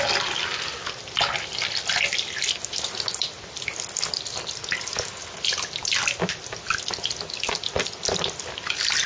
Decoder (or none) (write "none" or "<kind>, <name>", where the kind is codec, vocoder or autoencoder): none